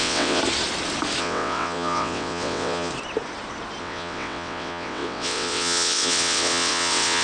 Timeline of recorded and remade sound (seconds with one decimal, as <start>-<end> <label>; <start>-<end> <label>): 0.0-0.4 remade; 0.4-1.2 recorded; 1.2-2.9 remade; 2.9-3.8 recorded; 3.8-7.2 remade